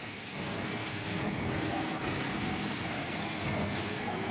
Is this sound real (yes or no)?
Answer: no